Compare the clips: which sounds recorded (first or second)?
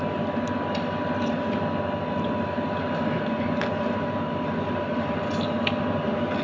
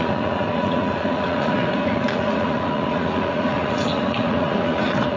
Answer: first